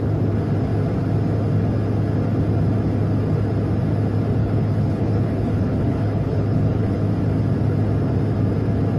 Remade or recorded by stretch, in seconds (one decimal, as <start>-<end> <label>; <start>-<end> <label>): 0.0-4.4 recorded; 4.4-7.0 remade; 7.0-9.0 recorded